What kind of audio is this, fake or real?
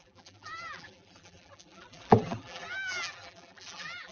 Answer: fake